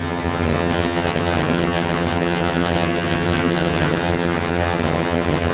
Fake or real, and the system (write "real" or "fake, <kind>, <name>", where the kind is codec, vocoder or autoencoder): fake, vocoder, HiFi-GAN